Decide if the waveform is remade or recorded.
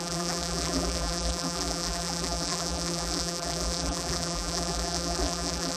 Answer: remade